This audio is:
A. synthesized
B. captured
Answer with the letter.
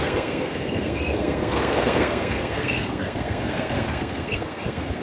A